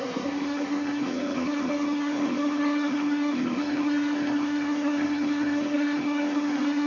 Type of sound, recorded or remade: remade